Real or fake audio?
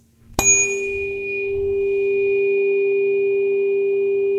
real